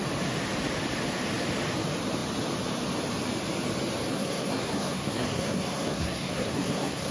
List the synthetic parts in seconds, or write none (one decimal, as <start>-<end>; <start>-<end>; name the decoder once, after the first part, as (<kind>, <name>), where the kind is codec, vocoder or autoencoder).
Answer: 4.1-7.1 (codec, SNAC)